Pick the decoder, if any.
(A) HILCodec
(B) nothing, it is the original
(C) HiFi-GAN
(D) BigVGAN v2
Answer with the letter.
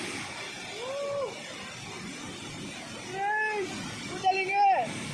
B